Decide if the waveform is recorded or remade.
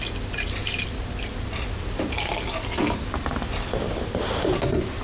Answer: remade